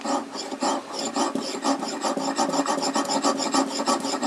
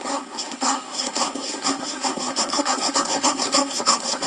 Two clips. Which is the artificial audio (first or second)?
second